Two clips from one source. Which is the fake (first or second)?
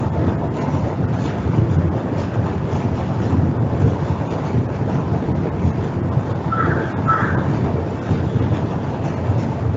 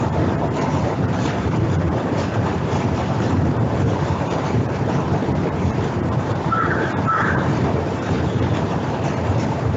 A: second